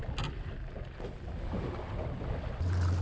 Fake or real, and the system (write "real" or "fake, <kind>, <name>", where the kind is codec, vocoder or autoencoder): real